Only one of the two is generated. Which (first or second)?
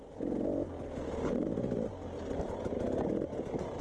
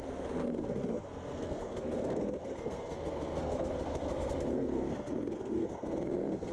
second